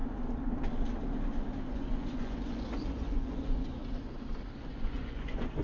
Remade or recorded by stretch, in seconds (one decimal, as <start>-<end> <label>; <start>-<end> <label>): 0.0-1.7 recorded; 1.7-3.8 remade; 3.8-4.6 recorded; 4.6-5.6 remade